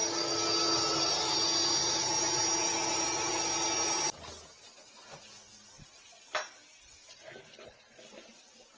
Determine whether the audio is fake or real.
real